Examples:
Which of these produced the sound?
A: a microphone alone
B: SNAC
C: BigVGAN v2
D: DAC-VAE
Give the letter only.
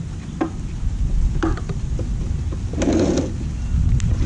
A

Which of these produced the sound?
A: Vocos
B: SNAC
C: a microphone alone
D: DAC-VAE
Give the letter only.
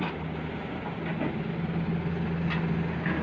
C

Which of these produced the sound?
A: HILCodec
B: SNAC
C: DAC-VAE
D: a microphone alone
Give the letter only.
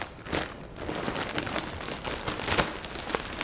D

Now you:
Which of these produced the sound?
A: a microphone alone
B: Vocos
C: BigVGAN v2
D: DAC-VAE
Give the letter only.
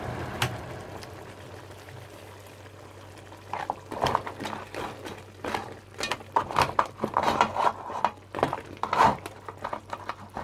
C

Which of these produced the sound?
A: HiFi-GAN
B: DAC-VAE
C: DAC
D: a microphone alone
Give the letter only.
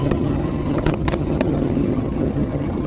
A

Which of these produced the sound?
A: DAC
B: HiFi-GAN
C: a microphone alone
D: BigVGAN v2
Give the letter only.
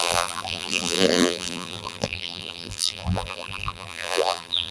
D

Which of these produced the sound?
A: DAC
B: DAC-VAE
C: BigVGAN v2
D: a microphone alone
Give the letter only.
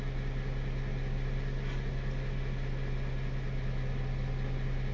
D